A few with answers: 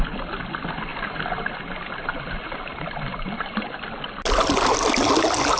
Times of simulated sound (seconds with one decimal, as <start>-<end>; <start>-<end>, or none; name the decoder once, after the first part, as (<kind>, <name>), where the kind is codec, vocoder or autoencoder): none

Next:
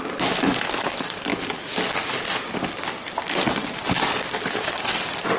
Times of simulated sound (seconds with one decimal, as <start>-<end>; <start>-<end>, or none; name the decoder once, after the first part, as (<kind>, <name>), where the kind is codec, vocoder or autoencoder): 0.0-1.3 (vocoder, BigVGAN v2); 2.2-3.6; 4.7-5.4

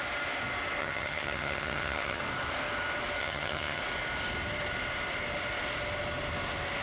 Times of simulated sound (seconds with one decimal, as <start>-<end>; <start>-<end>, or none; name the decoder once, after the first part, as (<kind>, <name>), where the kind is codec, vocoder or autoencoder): 0.8-2.2 (vocoder, HiFi-GAN); 3.2-3.8